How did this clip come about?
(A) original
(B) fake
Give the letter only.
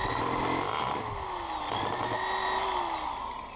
A